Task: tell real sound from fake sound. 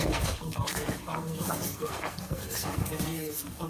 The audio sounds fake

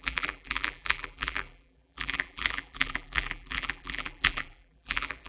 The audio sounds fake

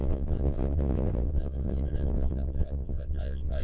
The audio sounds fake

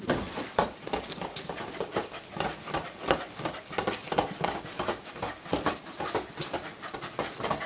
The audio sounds real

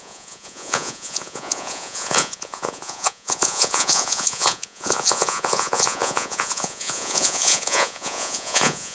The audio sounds fake